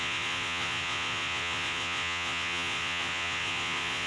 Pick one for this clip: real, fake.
fake